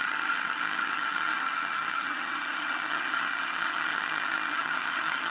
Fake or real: fake